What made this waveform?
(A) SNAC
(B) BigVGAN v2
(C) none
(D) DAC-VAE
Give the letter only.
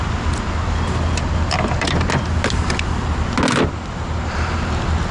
C